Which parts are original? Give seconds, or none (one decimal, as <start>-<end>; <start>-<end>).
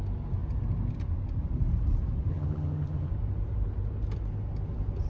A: 0.0-2.3; 3.1-5.1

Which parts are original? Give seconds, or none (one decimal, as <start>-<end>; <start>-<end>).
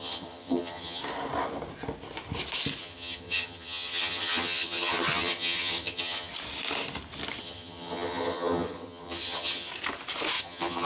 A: 1.0-2.8; 6.3-7.4; 9.7-10.4